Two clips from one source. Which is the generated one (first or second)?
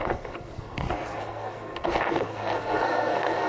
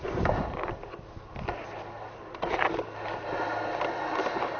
first